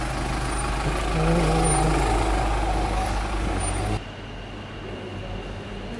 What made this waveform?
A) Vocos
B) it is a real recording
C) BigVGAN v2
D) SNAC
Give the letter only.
B